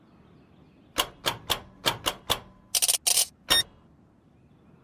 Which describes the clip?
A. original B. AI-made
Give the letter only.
A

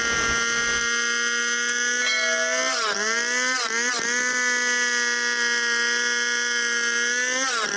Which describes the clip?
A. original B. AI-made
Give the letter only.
A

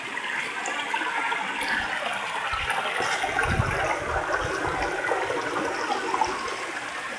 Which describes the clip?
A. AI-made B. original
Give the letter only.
B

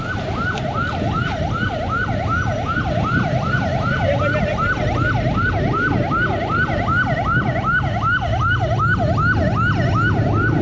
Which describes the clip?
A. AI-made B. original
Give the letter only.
B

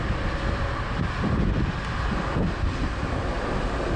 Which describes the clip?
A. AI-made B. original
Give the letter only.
B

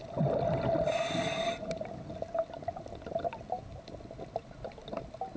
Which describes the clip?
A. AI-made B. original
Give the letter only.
B